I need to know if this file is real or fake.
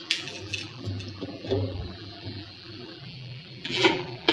fake